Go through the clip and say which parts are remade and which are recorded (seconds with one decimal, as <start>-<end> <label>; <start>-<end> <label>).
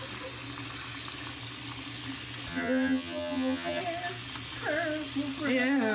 0.0-2.5 recorded; 2.5-3.8 remade; 3.8-5.9 recorded